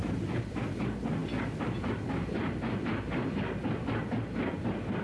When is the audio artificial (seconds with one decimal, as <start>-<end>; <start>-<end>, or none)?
none